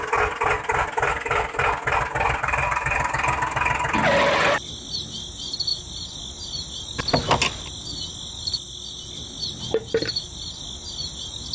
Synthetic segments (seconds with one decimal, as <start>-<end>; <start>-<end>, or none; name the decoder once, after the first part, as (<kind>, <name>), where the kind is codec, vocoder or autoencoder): none